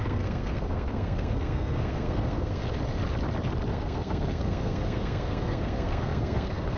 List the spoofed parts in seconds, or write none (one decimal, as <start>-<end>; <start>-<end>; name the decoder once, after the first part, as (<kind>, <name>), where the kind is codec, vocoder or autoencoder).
0.0-2.6 (codec, SNAC); 3.7-6.8